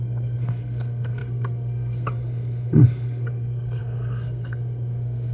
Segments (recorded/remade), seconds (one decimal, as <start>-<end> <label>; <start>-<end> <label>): 0.0-5.3 remade